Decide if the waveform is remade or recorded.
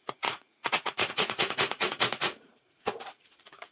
remade